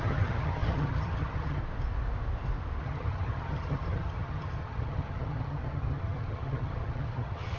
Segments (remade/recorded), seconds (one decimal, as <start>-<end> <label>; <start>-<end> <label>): 0.0-1.6 remade; 1.6-2.8 recorded; 2.8-7.6 remade